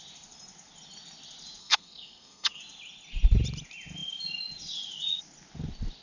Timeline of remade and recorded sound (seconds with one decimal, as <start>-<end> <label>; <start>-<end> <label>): 0.0-1.6 recorded; 1.6-2.6 remade; 2.6-6.0 recorded